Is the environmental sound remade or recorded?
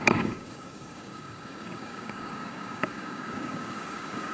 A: remade